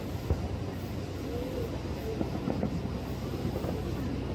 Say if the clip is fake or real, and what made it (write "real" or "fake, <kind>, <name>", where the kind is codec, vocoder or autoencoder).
real